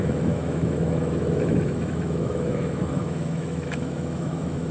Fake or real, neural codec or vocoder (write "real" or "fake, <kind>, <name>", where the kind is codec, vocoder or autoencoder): fake, autoencoder, DAC-VAE